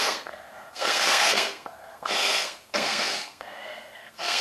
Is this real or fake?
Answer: fake